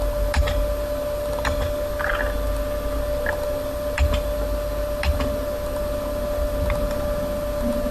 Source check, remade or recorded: recorded